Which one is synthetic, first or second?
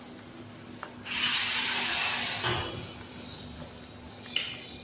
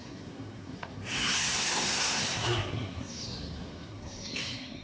second